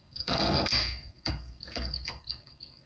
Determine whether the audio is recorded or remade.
remade